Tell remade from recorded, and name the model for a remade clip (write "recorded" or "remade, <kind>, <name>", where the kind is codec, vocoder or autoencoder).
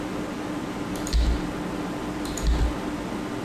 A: recorded